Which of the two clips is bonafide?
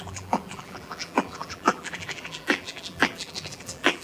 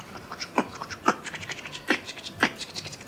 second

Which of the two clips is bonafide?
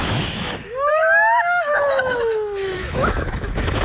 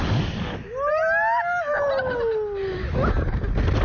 second